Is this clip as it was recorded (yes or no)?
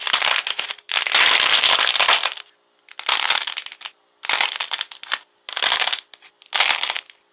yes